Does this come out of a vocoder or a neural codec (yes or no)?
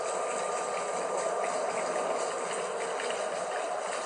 no